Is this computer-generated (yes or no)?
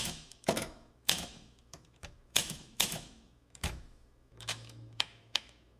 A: yes